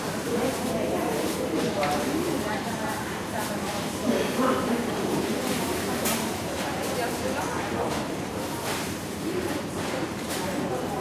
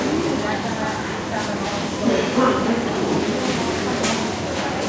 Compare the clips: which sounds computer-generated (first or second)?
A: first